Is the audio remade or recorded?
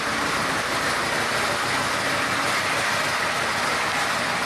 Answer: recorded